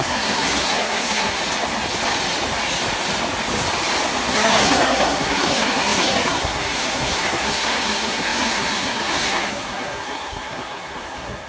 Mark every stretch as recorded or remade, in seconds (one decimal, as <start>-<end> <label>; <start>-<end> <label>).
0.0-1.4 remade; 1.4-4.3 recorded; 4.3-11.5 remade